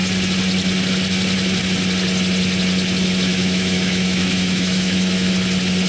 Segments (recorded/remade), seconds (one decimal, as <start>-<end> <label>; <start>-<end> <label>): 0.0-3.3 recorded; 3.3-5.3 remade; 5.3-5.9 recorded